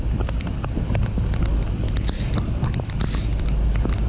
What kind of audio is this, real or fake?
real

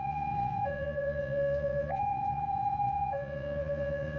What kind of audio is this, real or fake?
fake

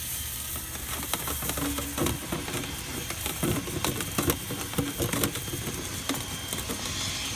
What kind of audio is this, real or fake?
real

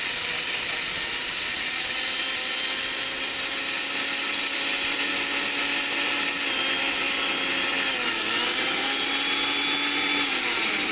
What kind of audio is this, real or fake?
real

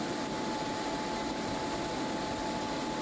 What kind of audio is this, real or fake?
real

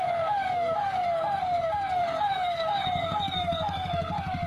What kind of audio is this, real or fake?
fake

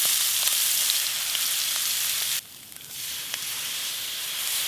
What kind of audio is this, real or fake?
real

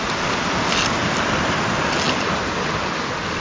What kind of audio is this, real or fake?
real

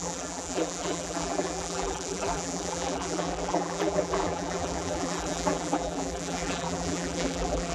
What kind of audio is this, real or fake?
fake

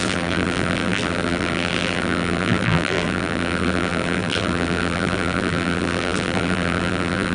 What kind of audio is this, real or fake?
fake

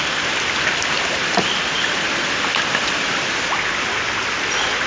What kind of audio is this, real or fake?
real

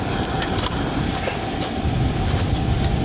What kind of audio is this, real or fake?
real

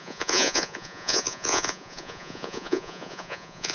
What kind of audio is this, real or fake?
fake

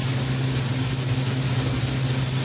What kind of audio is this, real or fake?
real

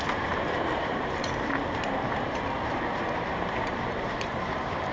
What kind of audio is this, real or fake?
fake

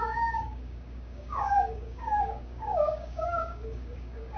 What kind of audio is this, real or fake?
fake